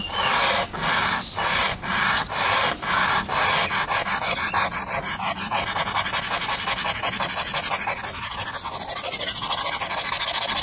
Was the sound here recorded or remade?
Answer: recorded